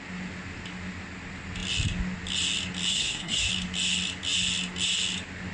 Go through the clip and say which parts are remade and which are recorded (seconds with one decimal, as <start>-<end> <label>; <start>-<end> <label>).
0.0-2.9 recorded; 2.9-3.5 remade; 3.5-5.5 recorded